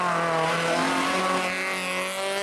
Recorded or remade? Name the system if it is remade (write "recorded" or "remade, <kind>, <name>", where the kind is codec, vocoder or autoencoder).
recorded